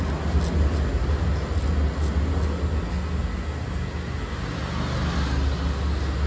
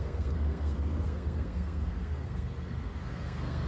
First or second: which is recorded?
first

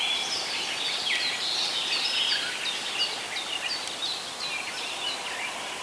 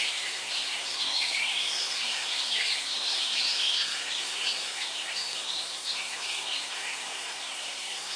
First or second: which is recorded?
first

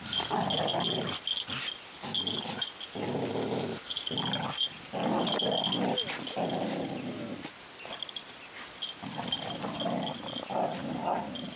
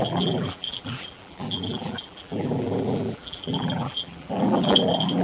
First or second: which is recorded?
first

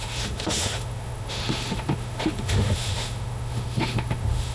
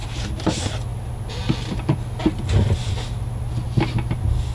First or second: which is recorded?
second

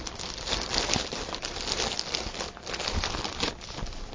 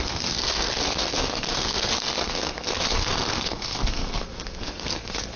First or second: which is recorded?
first